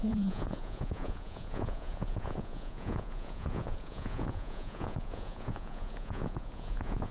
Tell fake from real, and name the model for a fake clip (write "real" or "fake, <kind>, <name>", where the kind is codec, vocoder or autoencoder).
fake, vocoder, Vocos